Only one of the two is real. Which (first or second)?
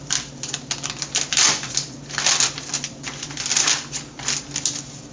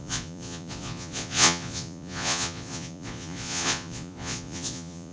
first